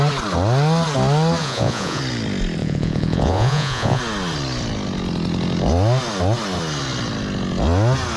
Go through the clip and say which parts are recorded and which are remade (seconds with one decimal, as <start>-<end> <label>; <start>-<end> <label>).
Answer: 0.0-1.4 recorded; 1.4-2.0 remade; 2.0-2.6 recorded; 2.6-4.0 remade; 4.0-8.2 recorded